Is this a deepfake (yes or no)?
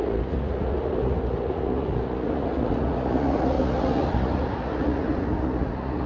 yes